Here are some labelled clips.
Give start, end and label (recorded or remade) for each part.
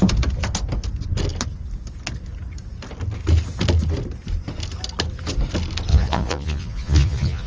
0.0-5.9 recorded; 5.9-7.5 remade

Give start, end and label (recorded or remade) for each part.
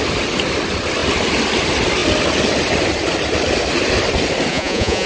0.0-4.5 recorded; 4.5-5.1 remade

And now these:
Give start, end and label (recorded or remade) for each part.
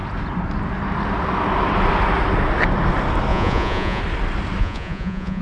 0.0-3.3 recorded; 3.3-4.0 remade; 4.0-4.6 recorded; 4.6-5.4 remade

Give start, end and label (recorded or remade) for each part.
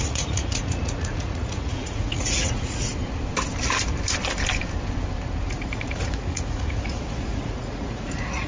0.0-2.9 remade; 2.9-5.5 recorded; 5.5-8.5 remade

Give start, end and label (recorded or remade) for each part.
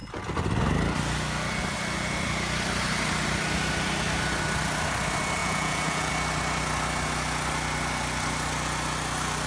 0.0-5.4 recorded; 5.4-6.1 remade; 6.1-9.5 recorded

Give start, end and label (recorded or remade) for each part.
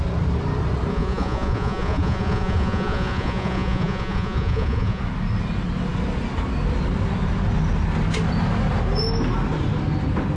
0.0-0.9 recorded; 0.9-5.0 remade; 5.0-10.4 recorded